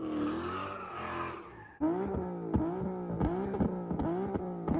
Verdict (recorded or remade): recorded